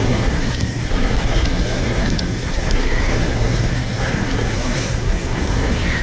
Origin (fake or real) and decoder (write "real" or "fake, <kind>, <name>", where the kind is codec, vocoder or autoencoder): fake, codec, SNAC